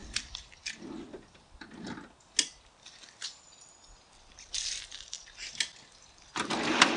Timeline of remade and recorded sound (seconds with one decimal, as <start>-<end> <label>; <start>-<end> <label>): 0.0-1.6 remade; 1.6-4.9 recorded; 4.9-5.5 remade; 5.5-7.0 recorded